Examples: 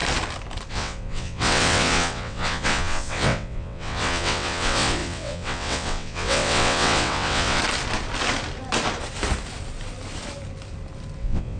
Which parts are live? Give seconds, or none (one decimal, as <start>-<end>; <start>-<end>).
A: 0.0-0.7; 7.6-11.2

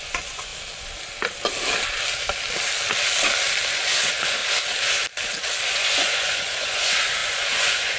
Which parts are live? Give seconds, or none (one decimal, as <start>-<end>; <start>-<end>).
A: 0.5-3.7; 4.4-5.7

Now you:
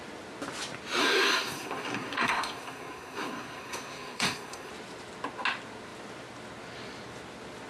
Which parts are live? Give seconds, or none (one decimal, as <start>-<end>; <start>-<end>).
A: 0.0-1.0; 4.7-7.7